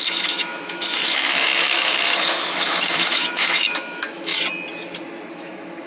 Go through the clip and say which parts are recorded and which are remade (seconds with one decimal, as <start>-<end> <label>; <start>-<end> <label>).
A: 0.0-4.3 remade; 4.3-5.3 recorded; 5.3-5.9 remade